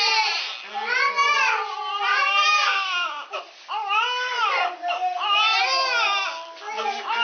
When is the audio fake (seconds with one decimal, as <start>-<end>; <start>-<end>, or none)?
2.1-3.4